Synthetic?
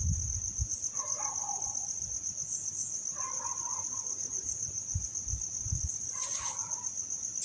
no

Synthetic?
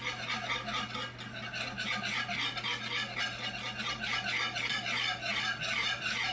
no